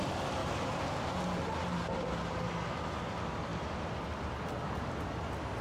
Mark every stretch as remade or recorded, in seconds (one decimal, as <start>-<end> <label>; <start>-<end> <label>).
0.0-5.6 recorded